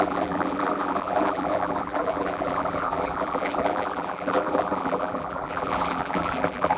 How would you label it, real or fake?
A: fake